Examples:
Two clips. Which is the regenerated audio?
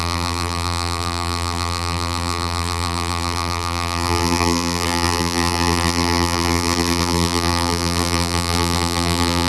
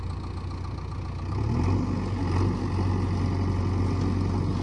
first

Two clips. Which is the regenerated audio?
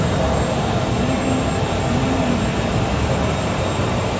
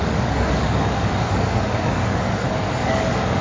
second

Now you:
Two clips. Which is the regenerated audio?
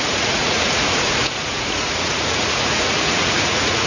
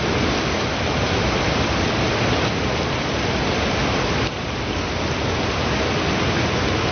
first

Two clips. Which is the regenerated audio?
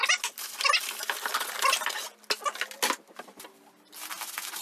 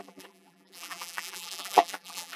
second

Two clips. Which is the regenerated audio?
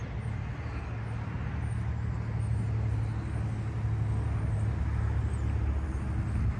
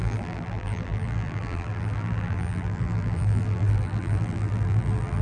second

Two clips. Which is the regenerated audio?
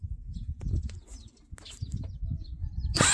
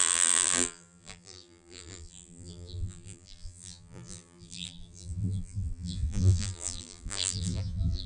second